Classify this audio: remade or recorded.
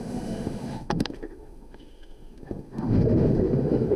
remade